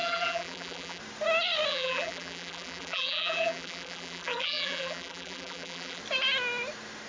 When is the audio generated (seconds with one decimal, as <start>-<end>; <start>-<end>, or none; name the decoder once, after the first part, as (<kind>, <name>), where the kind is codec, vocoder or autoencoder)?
0.0-1.0 (vocoder, BigVGAN v2); 1.7-6.0